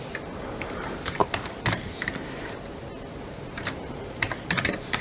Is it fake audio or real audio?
fake